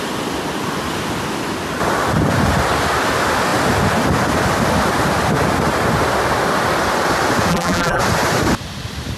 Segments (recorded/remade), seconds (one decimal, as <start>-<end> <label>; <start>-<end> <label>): 0.0-7.5 recorded; 7.5-8.0 remade; 8.0-9.2 recorded